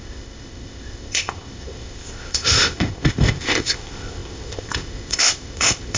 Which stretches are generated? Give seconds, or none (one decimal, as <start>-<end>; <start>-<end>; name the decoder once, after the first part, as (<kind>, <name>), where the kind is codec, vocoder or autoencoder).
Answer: 0.0-6.0 (codec, ZipCodec)